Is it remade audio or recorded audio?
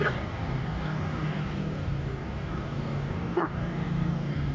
remade